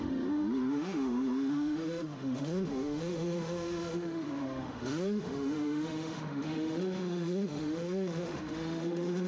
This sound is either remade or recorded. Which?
remade